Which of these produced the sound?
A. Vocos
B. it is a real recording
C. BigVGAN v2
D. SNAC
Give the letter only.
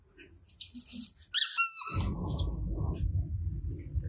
B